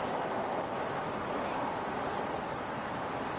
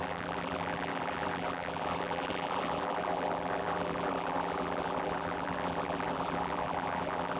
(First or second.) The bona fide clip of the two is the first